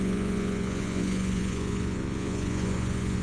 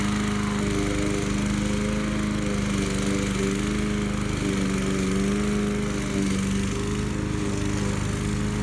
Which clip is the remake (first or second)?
first